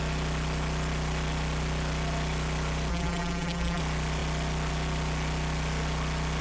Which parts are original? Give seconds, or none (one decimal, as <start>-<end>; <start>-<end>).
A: 0.0-2.9; 3.8-6.4